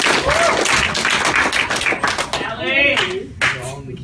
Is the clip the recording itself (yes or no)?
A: yes